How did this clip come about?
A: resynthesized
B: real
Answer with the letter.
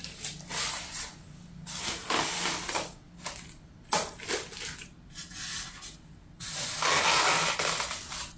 B